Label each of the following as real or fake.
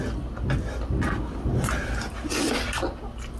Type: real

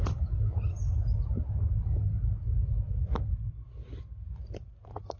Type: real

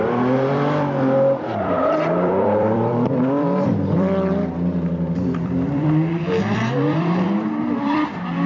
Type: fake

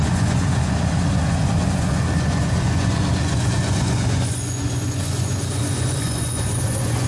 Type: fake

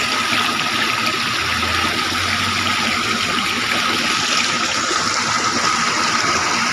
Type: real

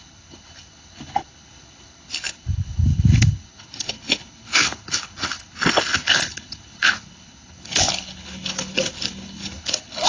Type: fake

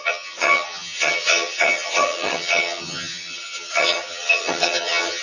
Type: fake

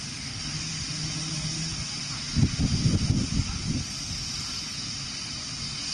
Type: real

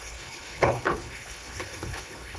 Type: fake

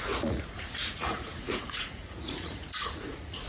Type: fake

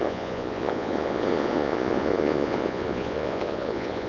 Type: fake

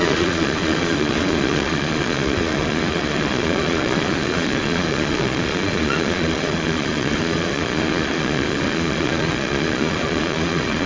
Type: fake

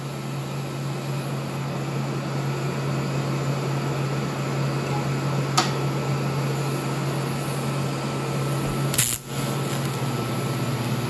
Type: real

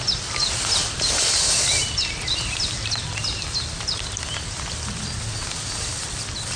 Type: real